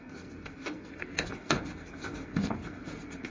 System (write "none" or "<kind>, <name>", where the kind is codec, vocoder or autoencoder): codec, SNAC